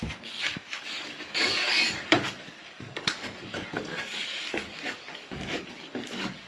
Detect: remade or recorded remade